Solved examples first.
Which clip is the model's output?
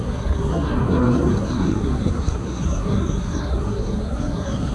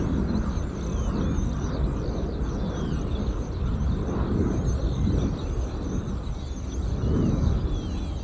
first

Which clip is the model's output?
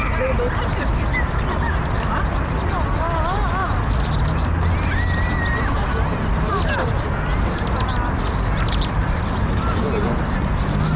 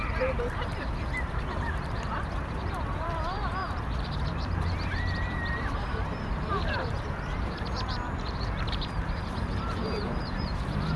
second